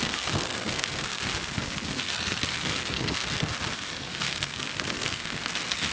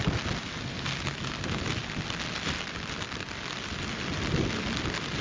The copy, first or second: first